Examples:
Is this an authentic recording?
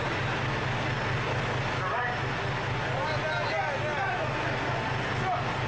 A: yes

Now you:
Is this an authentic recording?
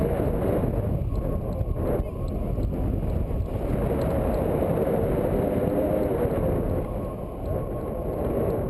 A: yes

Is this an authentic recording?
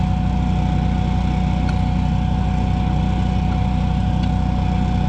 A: yes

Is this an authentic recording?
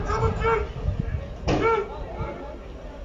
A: yes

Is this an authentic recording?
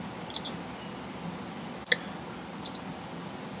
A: yes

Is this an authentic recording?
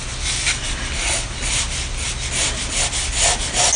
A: yes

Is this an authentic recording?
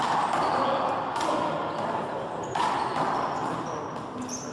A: yes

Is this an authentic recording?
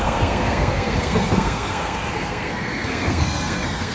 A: no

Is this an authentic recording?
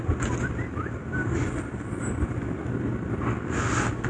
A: yes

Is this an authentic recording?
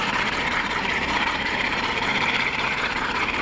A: no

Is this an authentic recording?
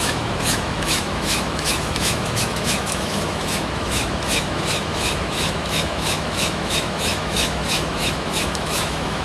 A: no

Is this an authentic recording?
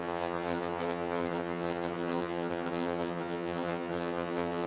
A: no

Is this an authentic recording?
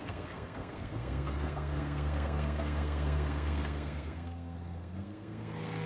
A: no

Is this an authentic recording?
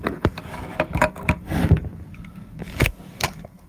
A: no